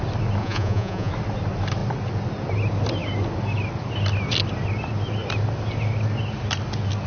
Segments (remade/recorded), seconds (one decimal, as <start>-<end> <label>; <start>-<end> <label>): 0.0-0.4 recorded; 0.4-1.1 remade; 1.1-7.1 recorded